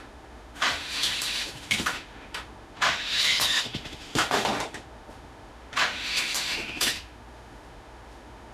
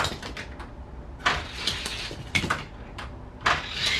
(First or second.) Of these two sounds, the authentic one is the second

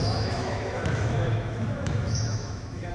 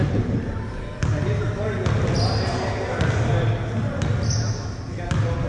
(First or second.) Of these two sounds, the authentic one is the second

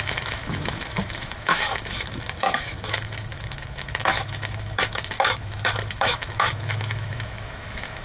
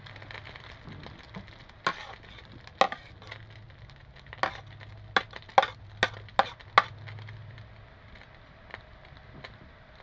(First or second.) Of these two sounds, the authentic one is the second